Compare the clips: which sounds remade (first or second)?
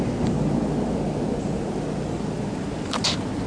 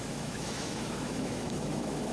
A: second